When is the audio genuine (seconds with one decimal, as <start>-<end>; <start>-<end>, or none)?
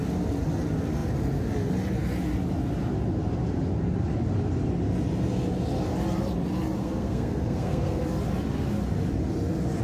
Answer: 0.0-6.8; 8.0-9.8